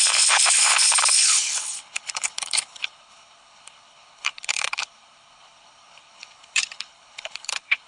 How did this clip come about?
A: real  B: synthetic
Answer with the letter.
B